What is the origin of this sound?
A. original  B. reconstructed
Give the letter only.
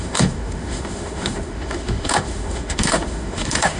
B